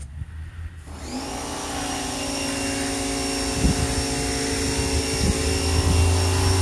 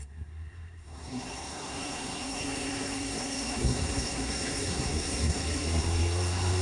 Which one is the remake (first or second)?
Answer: second